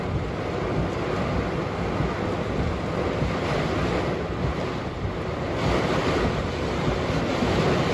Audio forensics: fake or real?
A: real